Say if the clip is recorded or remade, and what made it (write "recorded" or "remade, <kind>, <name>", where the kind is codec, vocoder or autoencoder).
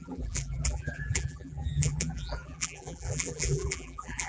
remade, vocoder, BigVGAN v2